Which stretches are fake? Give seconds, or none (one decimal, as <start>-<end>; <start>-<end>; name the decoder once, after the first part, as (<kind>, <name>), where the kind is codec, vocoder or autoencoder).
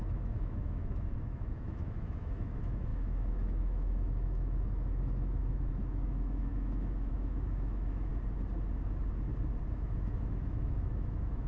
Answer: 0.0-8.1 (autoencoder, DAC-VAE); 9.7-11.5